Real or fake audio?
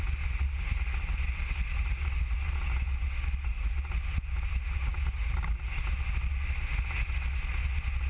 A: real